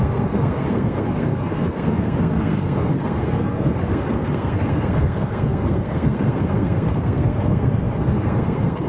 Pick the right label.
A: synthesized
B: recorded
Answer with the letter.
A